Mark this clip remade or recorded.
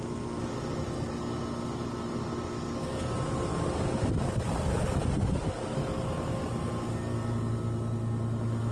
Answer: recorded